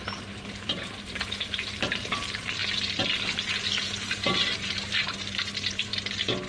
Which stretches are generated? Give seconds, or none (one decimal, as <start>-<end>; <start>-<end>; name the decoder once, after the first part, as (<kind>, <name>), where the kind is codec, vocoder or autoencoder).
0.0-2.6 (vocoder, BigVGAN v2); 4.4-5.9